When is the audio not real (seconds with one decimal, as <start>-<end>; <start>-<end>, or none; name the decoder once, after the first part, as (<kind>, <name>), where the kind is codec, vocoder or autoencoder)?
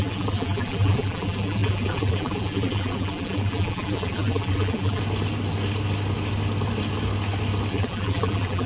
0.0-5.0 (vocoder, BigVGAN v2); 7.7-8.7